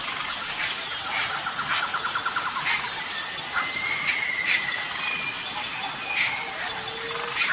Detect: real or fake real